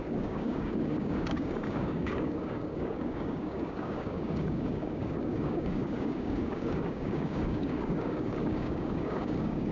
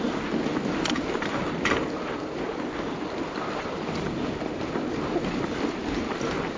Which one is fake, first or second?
first